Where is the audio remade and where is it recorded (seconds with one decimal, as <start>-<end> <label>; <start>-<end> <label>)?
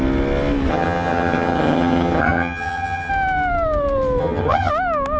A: 0.0-0.7 recorded; 0.7-3.1 remade; 3.1-4.2 recorded; 4.2-4.7 remade; 4.7-5.2 recorded